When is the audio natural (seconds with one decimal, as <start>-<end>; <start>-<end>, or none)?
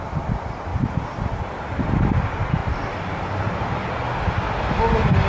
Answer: 0.0-5.3